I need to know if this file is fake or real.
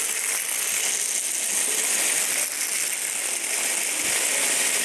real